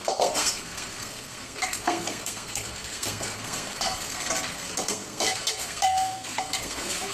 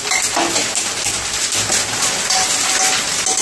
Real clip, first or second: second